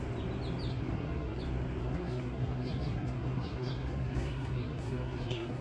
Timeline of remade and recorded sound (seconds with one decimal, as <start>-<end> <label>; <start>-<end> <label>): 0.0-0.7 recorded; 0.7-1.4 remade; 1.4-1.8 recorded; 1.8-5.6 remade